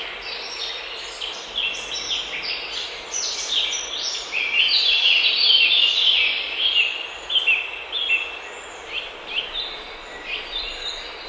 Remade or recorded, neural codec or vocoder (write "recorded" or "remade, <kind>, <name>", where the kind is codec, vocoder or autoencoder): recorded